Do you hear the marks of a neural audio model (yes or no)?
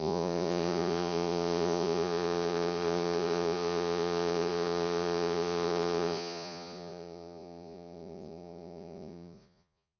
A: yes